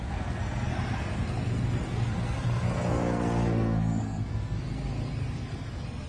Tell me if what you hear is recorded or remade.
remade